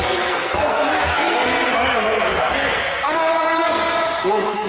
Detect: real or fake fake